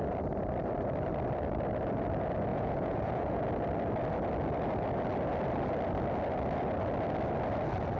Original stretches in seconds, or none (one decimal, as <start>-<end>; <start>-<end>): 0.0-2.5; 3.4-8.0